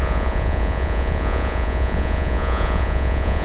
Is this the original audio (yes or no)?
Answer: no